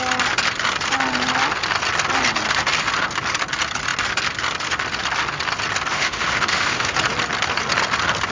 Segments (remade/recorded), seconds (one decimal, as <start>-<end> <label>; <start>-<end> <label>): 0.0-5.9 recorded; 5.9-6.9 remade; 6.9-8.3 recorded